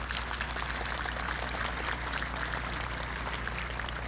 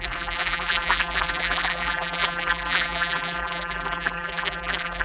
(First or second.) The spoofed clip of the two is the second